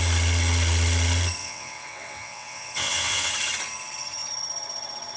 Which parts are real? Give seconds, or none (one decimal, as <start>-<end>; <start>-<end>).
0.0-1.4; 3.3-5.2